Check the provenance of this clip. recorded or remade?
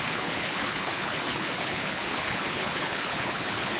remade